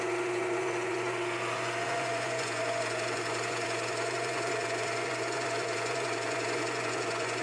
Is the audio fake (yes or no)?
yes